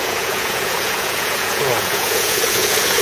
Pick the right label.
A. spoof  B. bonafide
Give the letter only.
A